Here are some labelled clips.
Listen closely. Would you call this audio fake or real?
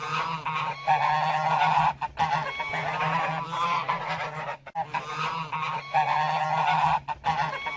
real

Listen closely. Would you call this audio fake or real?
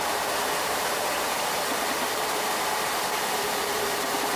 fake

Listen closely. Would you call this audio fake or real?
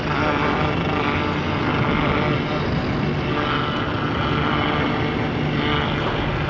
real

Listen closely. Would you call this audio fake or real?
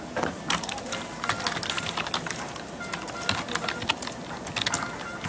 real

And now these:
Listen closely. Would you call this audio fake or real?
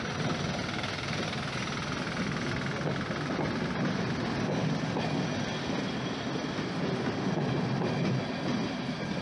real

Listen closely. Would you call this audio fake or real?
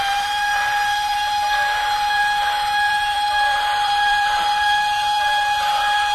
fake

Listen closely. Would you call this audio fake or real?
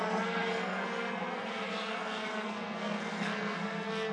fake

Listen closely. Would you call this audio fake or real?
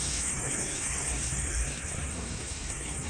fake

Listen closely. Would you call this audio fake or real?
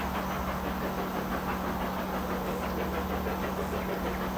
real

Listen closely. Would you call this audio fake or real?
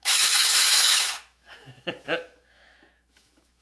fake